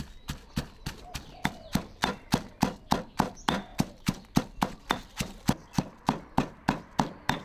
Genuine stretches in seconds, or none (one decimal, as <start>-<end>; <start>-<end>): 0.0-3.7; 4.4-7.4